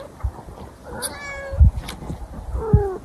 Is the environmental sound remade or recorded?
recorded